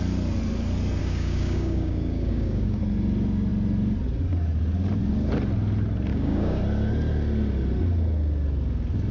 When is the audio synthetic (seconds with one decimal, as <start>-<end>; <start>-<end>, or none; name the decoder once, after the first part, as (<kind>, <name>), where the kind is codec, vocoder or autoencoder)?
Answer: 1.0-2.8 (codec, DAC); 6.1-6.6